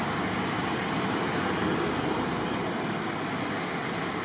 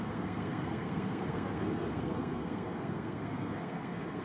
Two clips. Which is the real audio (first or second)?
first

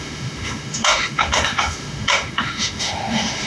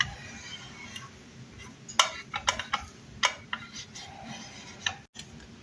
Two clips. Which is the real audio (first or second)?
second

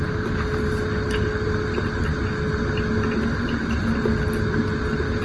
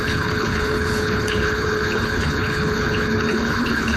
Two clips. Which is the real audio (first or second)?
first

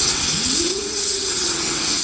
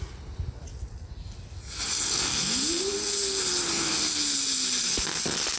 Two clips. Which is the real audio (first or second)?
second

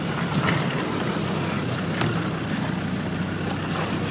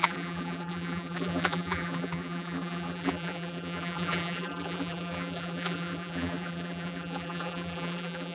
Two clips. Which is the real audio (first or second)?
first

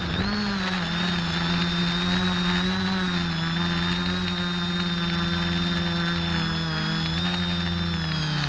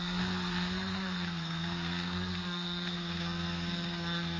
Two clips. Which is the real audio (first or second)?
first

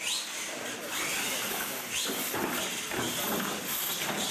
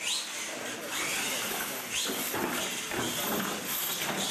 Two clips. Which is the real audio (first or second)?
second